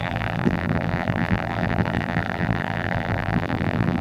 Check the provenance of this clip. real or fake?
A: fake